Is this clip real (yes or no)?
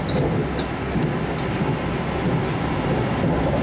yes